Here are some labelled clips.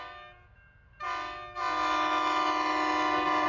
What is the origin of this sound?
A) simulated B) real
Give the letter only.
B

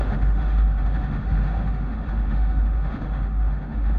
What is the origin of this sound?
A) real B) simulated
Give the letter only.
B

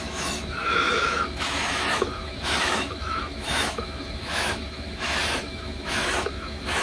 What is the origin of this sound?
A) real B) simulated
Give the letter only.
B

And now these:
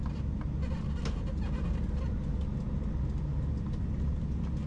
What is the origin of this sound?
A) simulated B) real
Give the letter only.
B